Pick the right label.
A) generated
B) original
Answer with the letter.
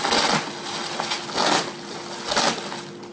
B